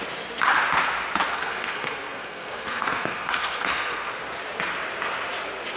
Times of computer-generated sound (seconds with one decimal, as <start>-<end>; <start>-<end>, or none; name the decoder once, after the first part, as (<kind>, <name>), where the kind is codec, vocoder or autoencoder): 1.3-4.2 (codec, SNAC)